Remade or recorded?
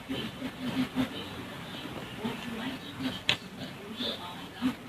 recorded